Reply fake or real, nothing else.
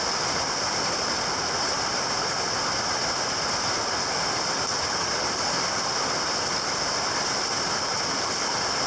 real